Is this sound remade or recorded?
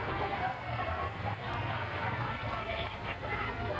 remade